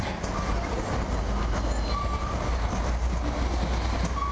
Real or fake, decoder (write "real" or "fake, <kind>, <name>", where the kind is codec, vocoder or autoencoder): real